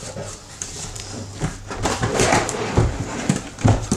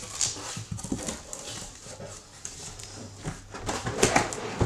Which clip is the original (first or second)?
second